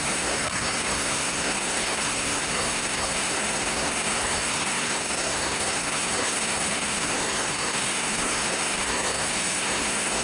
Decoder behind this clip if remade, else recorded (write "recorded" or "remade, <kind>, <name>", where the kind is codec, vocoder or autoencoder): remade, codec, SNAC